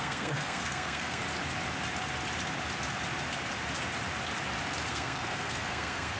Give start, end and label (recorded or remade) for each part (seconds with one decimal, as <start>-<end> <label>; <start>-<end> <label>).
0.0-1.2 remade; 1.2-4.9 recorded; 4.9-6.2 remade